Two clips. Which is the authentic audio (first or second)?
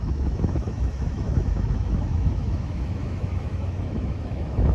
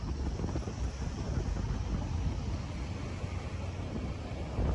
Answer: second